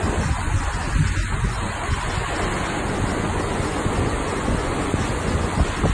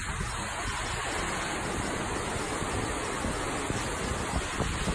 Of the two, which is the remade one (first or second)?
first